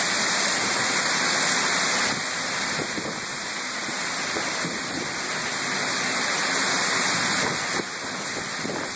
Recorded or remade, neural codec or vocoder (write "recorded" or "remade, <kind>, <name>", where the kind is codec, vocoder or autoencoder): recorded